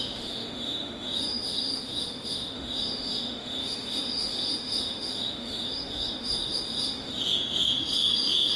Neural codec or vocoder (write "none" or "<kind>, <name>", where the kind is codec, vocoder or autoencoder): autoencoder, DAC-VAE